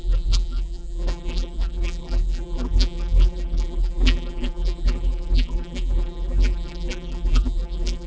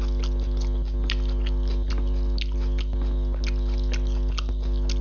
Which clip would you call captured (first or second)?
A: second